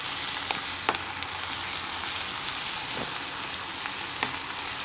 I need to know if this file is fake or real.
real